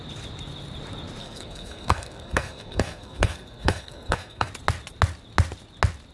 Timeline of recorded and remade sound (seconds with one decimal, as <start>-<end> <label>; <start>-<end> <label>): 0.0-1.2 recorded; 1.2-4.5 remade; 4.5-6.1 recorded